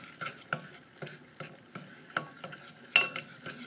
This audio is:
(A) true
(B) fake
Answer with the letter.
A